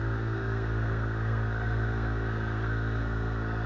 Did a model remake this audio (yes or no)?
yes